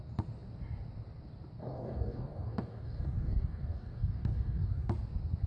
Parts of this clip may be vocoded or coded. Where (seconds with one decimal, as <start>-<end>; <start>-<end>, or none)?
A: 1.6-4.9